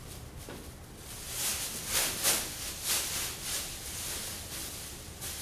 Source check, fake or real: real